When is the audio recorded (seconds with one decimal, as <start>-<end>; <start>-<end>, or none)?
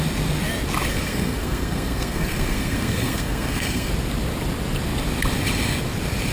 0.0-0.9; 3.9-6.3